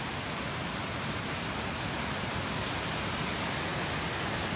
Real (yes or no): yes